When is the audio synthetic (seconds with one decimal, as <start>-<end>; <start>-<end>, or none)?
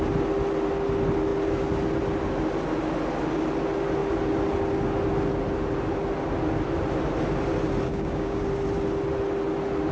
7.9-8.4